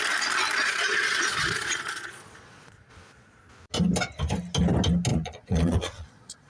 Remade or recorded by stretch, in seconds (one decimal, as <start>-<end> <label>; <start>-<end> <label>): 0.0-0.6 recorded; 0.6-3.4 remade; 3.4-5.1 recorded; 5.1-6.5 remade